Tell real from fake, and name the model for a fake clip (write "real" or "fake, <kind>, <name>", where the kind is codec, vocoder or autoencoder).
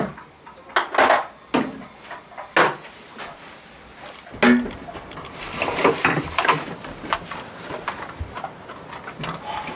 real